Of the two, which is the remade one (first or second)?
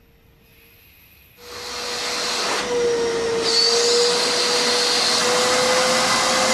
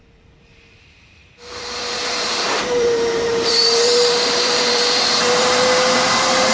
second